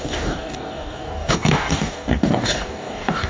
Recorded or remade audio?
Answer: remade